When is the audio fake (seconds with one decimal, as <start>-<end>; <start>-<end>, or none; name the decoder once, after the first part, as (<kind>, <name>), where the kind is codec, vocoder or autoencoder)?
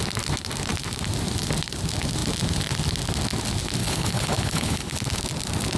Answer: 3.8-5.0 (codec, HILCodec)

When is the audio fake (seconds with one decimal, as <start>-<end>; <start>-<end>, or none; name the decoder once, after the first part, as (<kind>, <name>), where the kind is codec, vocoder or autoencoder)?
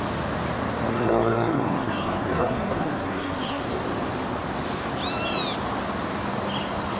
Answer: 0.9-3.6 (codec, SNAC)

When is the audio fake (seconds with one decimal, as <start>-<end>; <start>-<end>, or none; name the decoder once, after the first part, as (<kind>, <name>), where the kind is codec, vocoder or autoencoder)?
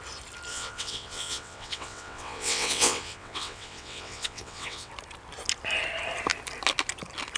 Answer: 0.5-4.9 (vocoder, WaveNeXt)